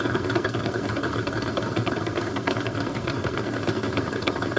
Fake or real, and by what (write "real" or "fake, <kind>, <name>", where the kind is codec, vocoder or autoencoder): fake, codec, SNAC